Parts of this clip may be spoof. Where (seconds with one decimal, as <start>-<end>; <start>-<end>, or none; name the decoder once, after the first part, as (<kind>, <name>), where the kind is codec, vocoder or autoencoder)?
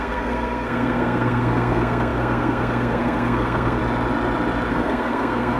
0.0-3.8 (codec, SNAC); 4.7-5.6